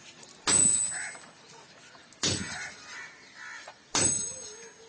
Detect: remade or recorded recorded